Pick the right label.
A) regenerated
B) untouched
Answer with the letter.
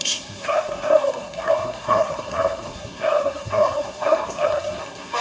A